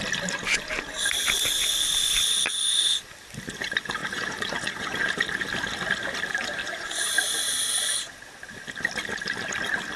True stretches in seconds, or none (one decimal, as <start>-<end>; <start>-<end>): 0.0-4.0; 5.1-6.6; 7.1-10.0